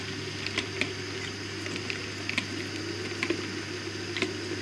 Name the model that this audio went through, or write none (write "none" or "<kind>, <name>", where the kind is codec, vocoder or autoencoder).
none